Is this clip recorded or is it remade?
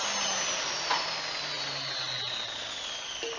recorded